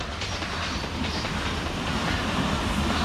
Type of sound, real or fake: real